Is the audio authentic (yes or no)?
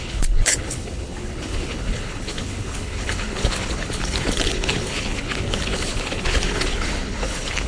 no